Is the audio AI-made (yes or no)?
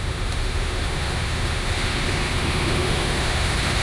yes